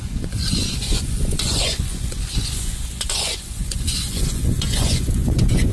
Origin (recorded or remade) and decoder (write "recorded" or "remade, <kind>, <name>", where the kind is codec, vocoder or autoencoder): remade, vocoder, Vocos